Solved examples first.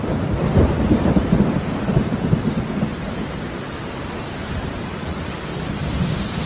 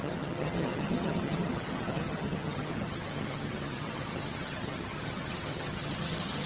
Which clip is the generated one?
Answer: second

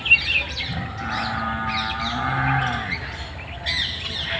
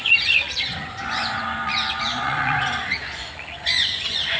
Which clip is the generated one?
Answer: second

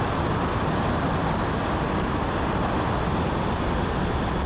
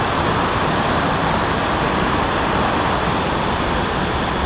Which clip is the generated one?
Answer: second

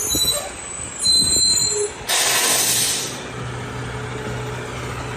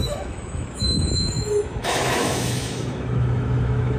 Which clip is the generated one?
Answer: second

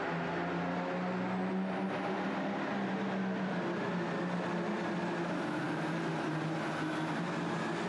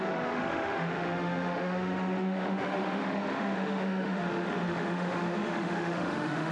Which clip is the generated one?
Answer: second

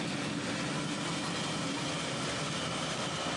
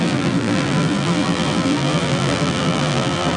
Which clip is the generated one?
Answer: second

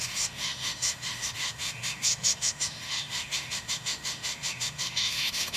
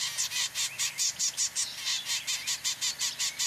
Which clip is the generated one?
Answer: first